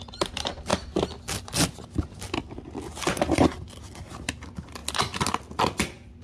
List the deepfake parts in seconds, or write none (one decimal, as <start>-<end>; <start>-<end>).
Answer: none